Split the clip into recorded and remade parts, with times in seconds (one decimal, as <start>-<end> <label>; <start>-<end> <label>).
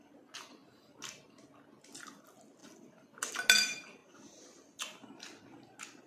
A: 0.0-6.1 recorded